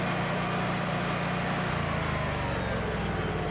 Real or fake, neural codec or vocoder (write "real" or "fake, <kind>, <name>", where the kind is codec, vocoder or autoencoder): real